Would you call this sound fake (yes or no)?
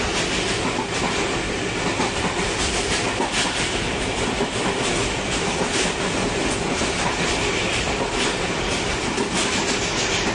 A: no